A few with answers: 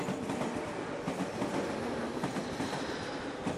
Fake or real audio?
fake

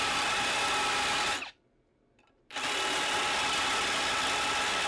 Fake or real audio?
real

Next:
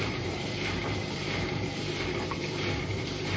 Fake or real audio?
fake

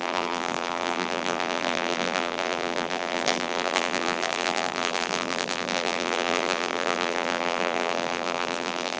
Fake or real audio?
fake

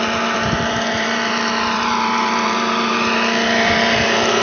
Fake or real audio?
fake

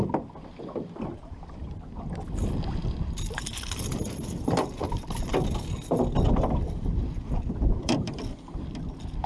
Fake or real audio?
fake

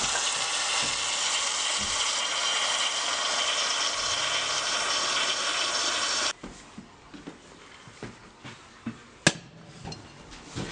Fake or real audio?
real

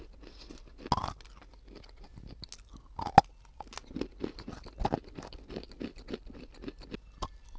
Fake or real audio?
real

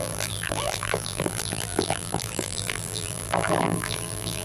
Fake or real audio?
fake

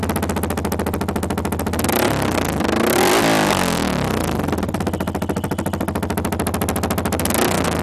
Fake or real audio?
real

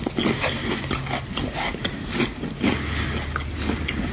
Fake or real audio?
real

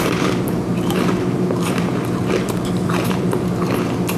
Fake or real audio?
fake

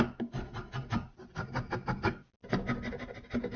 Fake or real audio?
real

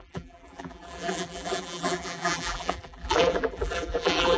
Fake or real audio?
fake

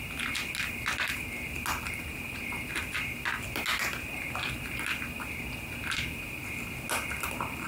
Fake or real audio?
real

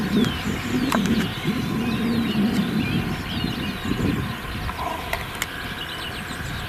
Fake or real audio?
real